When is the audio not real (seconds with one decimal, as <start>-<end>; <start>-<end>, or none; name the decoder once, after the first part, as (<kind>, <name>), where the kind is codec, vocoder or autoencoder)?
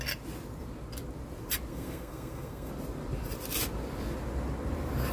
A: 1.7-2.7 (codec, SNAC)